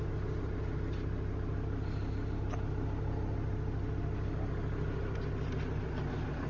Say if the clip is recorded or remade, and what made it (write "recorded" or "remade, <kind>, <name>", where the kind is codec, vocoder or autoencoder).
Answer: recorded